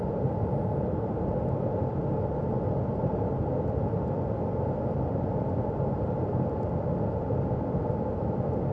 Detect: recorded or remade recorded